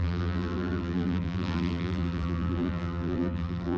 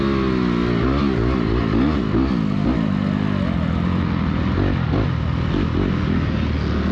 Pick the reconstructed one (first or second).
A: first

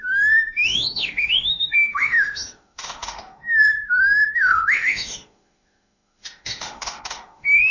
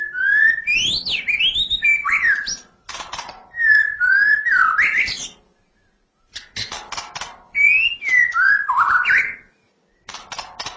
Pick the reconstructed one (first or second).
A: first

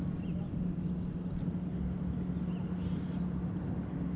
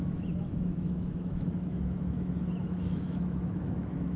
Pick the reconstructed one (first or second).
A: second